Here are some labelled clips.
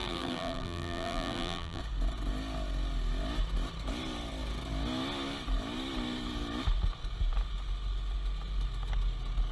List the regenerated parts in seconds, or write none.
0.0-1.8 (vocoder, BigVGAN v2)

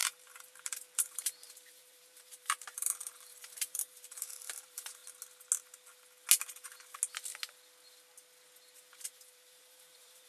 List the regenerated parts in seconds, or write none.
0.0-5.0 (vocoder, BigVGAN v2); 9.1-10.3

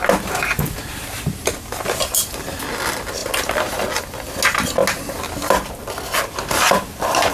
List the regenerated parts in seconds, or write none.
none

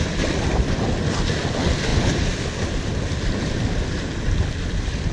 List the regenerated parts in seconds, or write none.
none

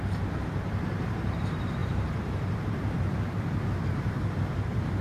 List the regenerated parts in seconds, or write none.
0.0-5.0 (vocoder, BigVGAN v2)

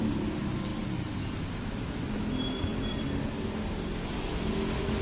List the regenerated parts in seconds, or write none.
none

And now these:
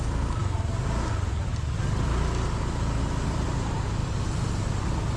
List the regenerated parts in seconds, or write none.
none